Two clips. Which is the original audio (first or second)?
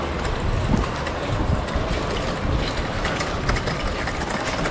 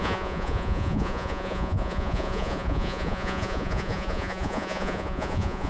first